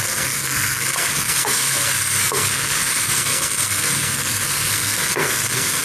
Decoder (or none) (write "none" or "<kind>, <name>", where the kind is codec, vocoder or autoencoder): codec, SNAC